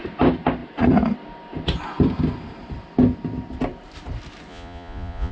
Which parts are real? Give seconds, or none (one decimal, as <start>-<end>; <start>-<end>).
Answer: 0.0-4.5

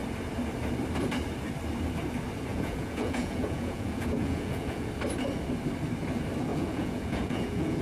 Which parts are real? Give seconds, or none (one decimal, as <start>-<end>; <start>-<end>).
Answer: 0.0-2.5; 4.9-6.5

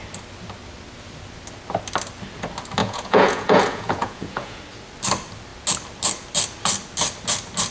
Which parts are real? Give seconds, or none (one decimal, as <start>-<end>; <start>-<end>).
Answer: 0.0-2.8; 4.6-7.7

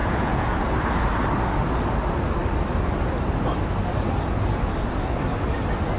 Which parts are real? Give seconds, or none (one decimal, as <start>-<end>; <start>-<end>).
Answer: 0.6-6.0

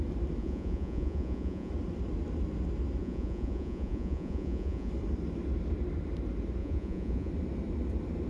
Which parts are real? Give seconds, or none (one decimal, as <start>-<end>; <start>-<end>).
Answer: 0.0-0.4; 1.7-3.0; 4.9-6.6; 7.3-8.3

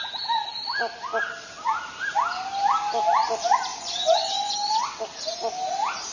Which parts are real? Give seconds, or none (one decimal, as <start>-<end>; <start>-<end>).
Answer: 0.0-3.7; 4.7-6.1

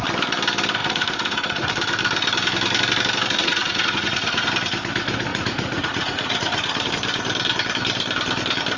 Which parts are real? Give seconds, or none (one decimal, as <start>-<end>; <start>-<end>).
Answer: 0.0-0.8; 1.7-3.4; 4.5-5.3; 6.9-8.8